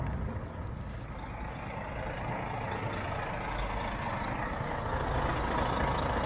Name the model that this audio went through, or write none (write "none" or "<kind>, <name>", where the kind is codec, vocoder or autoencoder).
none